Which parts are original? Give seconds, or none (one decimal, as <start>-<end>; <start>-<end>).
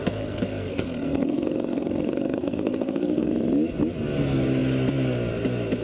3.3-5.8